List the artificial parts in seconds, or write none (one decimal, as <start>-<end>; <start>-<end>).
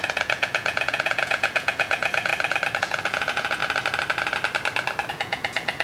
0.0-2.3; 2.8-3.6; 5.1-5.8